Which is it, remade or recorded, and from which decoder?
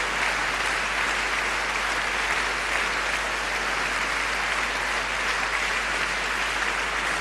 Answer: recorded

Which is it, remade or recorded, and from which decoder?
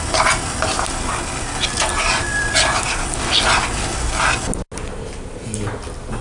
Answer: recorded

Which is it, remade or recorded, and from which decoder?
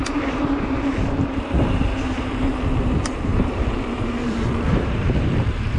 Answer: remade, vocoder, BigVGAN v2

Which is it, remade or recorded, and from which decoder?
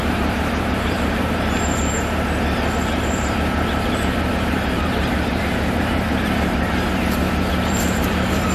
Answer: remade, vocoder, BigVGAN v2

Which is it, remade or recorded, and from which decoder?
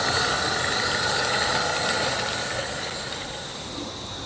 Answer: recorded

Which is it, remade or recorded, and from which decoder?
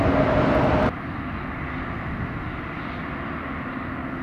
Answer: recorded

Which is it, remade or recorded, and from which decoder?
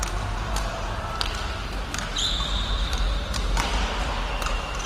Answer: remade, vocoder, BigVGAN v2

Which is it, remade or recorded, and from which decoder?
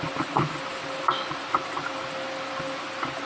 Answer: recorded